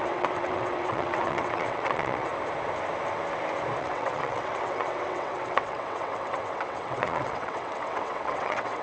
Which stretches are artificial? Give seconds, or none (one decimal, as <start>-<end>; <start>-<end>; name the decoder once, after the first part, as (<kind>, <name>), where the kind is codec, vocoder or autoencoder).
0.0-2.3 (vocoder, WaveNeXt); 3.8-8.8